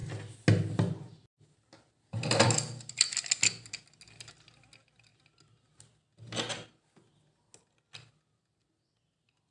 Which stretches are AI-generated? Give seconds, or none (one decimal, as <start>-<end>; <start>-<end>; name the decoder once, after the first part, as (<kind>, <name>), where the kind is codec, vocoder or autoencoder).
none